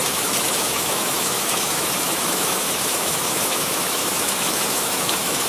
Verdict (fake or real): fake